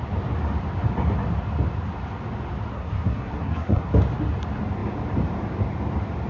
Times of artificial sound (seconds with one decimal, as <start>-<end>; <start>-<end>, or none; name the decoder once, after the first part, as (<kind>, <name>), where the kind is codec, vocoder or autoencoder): 2.7-3.9 (codec, SNAC)